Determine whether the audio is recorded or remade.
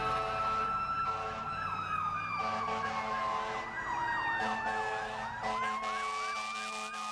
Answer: recorded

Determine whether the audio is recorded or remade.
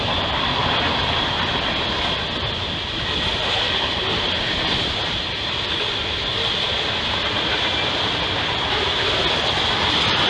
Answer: recorded